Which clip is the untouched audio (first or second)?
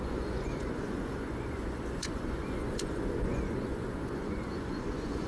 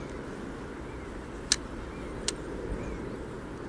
second